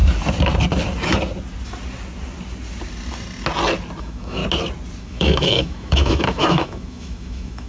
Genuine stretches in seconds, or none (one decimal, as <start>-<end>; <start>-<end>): 0.0-4.0; 4.4-5.0